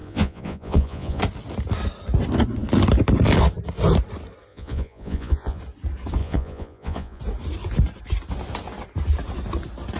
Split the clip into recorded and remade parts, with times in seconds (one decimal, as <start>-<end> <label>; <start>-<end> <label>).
0.0-1.2 remade; 1.2-4.5 recorded; 4.5-5.6 remade; 5.6-6.2 recorded; 6.2-7.2 remade; 7.2-10.0 recorded